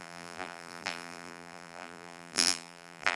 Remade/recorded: remade